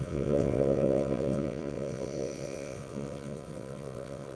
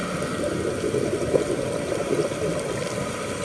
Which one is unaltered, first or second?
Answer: second